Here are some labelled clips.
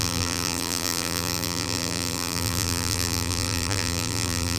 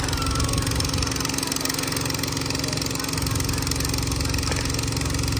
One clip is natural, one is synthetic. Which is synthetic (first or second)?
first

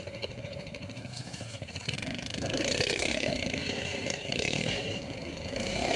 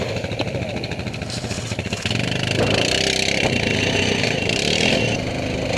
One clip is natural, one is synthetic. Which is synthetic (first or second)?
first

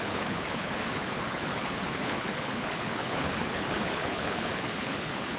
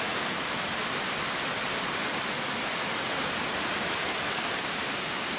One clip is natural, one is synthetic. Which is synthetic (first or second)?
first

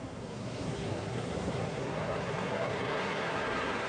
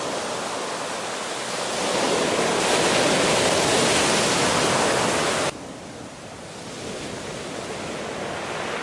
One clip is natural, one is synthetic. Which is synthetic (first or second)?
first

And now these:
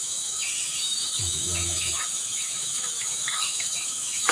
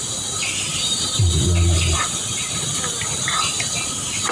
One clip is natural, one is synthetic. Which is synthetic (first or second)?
first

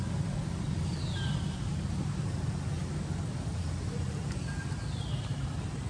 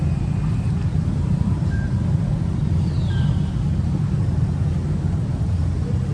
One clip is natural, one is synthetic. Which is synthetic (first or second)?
second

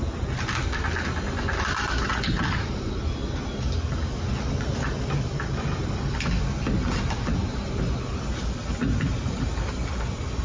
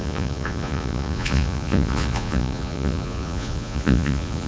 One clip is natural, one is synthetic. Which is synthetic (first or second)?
second